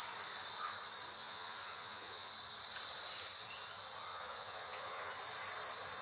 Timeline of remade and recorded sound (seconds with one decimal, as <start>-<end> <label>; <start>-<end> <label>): 0.0-1.2 recorded; 1.2-2.3 remade; 2.3-4.1 recorded; 4.1-5.1 remade; 5.1-6.0 recorded